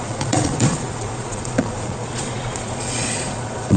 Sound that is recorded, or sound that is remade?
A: remade